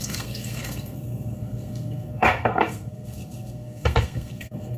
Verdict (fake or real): fake